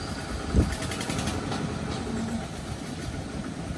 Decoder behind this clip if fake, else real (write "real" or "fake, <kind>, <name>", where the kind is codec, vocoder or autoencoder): real